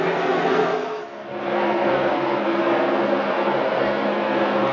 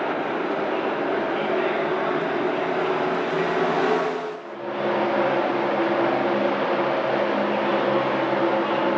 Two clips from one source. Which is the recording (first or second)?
second